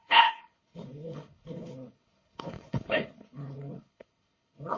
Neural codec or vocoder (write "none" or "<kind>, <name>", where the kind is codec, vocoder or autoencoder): codec, HILCodec